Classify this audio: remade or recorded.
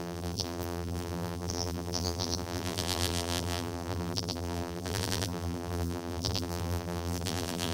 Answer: remade